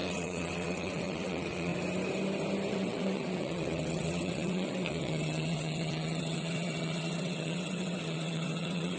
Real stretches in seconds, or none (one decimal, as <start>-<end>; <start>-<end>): 1.7-2.7